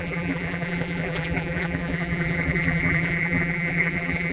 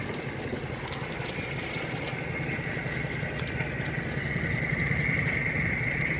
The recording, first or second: second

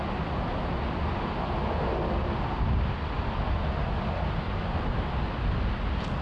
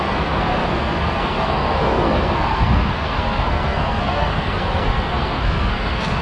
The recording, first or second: first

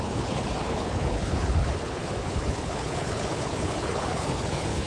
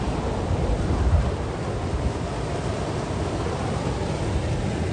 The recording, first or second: second